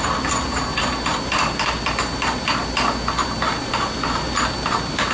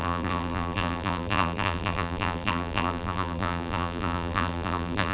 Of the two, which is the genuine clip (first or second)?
first